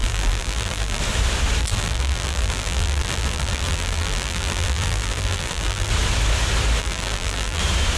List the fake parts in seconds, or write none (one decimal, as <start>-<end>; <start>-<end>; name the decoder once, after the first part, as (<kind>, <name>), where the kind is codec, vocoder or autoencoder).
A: 0.0-1.0 (vocoder, BigVGAN v2); 1.6-5.9; 6.8-7.6